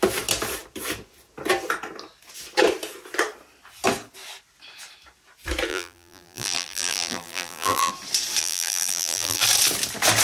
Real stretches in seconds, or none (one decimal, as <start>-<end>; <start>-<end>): 0.0-5.7; 7.9-8.4; 9.4-10.2